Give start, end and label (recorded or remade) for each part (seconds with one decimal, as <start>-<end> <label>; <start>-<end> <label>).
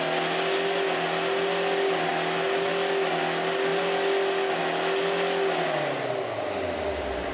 0.0-7.3 recorded